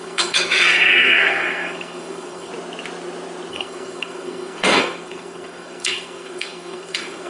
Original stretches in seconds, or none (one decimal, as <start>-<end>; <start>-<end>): 2.5-3.5